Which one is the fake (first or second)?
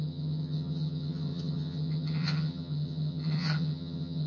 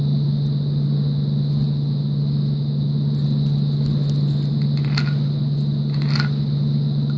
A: first